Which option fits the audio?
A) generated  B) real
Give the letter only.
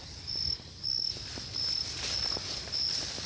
B